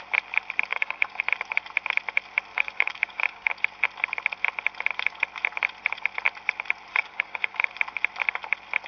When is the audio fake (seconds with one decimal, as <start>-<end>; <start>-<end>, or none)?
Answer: 0.7-1.2; 2.5-3.5; 6.9-7.7